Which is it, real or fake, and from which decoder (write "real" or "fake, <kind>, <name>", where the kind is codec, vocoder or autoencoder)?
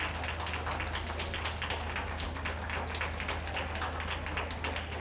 real